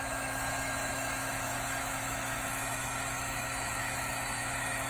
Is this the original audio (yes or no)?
no